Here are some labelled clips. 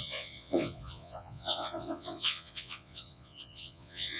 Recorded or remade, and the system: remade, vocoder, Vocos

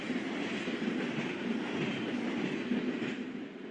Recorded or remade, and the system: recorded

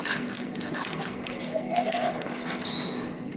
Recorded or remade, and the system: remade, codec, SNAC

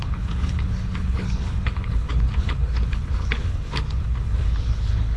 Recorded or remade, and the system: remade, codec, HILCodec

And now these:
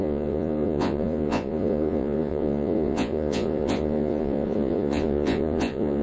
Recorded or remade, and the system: remade, vocoder, Vocos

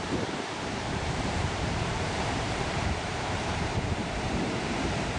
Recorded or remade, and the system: remade, vocoder, BigVGAN v2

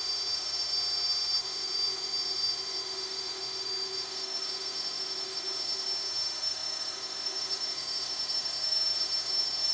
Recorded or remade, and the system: remade, autoencoder, DAC-VAE